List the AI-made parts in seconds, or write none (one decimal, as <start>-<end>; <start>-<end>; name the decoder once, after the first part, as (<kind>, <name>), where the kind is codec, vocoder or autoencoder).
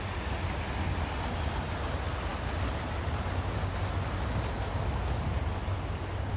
none